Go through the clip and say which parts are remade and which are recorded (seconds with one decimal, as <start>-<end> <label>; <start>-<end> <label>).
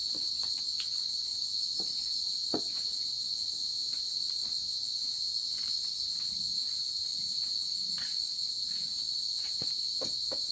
0.0-0.6 remade; 0.6-1.3 recorded; 1.3-5.6 remade; 5.6-7.1 recorded; 7.1-9.7 remade; 9.7-10.5 recorded